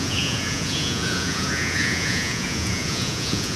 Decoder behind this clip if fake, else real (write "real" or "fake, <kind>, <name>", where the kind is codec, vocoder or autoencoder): fake, vocoder, Vocos